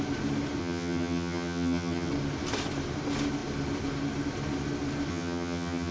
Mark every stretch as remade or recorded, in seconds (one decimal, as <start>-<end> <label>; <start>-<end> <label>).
0.0-0.6 recorded; 0.6-2.1 remade; 2.1-5.1 recorded; 5.1-5.9 remade